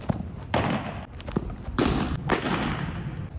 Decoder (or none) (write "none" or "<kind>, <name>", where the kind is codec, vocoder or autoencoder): none